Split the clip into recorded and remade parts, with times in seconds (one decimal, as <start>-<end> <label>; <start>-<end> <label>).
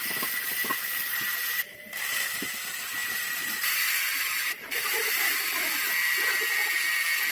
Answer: 0.0-3.0 recorded; 3.0-5.9 remade; 5.9-7.3 recorded